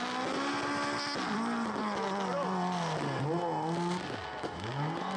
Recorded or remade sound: recorded